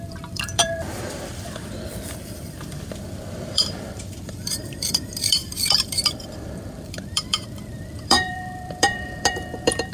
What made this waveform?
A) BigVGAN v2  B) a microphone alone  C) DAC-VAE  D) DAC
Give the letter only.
A